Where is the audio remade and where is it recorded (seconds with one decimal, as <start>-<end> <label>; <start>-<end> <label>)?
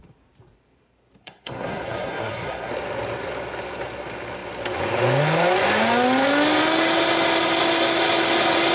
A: 0.0-1.2 recorded; 1.2-2.7 remade; 2.7-8.7 recorded